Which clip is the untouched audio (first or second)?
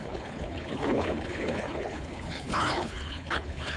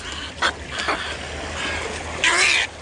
second